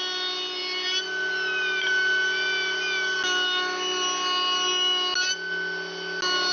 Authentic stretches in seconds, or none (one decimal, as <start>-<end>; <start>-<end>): 0.0-6.5